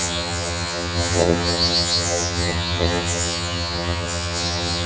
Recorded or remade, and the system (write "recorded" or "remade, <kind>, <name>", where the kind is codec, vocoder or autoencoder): remade, vocoder, HiFi-GAN